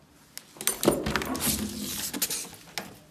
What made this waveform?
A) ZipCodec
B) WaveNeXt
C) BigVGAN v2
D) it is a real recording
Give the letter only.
D